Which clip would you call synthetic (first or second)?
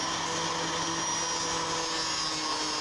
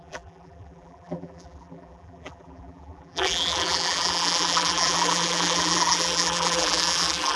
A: second